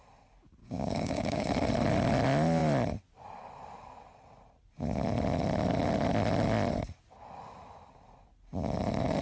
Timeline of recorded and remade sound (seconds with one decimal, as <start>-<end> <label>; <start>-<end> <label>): 0.0-0.6 recorded; 0.6-1.5 remade; 1.5-9.2 recorded